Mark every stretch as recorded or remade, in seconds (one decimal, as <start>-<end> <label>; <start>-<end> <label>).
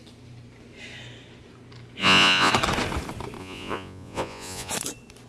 0.0-2.0 recorded; 2.0-2.5 remade; 2.5-3.4 recorded; 3.4-4.7 remade; 4.7-5.3 recorded